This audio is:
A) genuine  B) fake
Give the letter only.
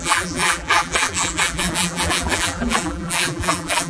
B